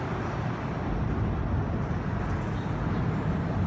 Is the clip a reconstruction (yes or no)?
no